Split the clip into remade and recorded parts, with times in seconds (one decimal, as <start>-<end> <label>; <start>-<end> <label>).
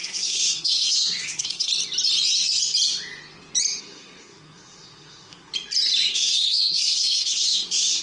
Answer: 0.0-1.7 remade; 1.7-3.8 recorded; 3.8-5.5 remade; 5.5-6.1 recorded; 6.1-8.0 remade